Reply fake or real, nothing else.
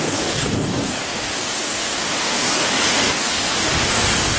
fake